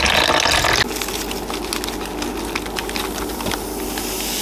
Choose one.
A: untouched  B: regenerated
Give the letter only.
A